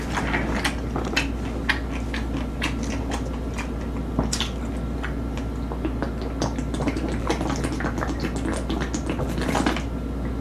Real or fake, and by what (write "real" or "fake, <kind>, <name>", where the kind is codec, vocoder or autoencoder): real